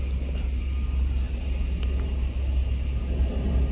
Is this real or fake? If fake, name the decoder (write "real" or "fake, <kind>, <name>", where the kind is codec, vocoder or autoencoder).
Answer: real